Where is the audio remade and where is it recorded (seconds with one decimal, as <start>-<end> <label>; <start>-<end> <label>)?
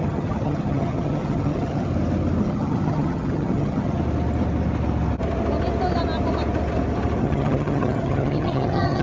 0.0-1.9 remade; 1.9-2.4 recorded; 2.4-4.0 remade; 4.0-7.2 recorded; 7.2-9.0 remade